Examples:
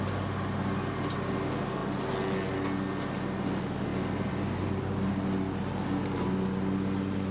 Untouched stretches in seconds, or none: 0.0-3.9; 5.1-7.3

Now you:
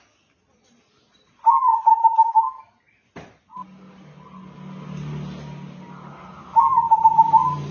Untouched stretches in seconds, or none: 0.0-1.9; 2.6-7.7

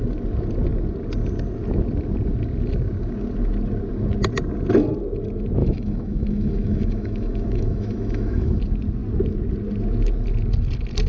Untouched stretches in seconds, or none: 0.0-5.6; 8.6-11.1

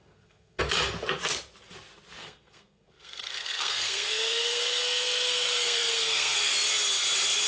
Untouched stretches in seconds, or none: 0.6-2.2; 6.5-7.5